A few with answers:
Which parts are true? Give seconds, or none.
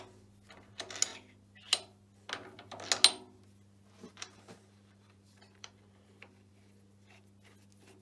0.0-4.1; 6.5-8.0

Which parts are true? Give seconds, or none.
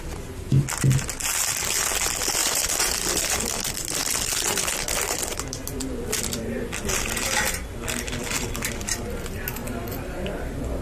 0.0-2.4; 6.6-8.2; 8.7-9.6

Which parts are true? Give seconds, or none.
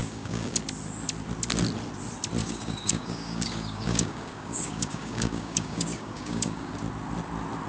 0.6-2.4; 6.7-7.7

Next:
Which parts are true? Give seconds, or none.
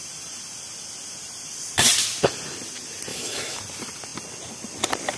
0.0-3.1; 3.6-5.2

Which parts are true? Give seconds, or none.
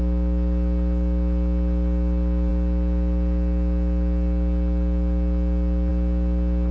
0.0-6.7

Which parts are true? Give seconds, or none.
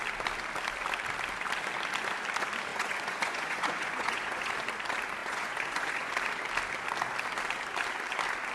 0.0-2.7; 4.5-5.2; 6.1-8.5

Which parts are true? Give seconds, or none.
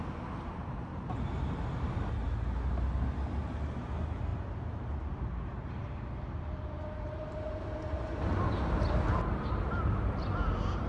0.0-10.9